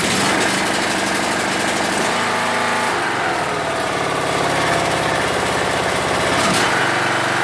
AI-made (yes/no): no